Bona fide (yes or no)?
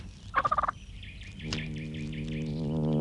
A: yes